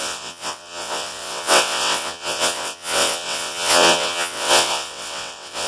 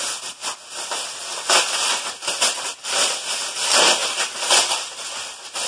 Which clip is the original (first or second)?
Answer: second